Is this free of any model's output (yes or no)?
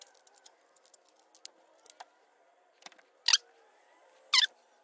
yes